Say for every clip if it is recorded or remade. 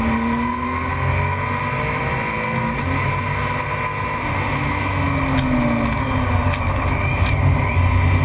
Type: recorded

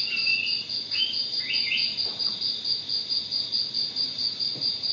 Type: recorded